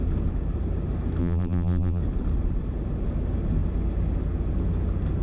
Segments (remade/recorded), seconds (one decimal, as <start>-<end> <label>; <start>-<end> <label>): 0.0-1.2 recorded; 1.2-2.0 remade; 2.0-5.2 recorded